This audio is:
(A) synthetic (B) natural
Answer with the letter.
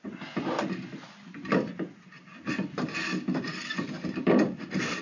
B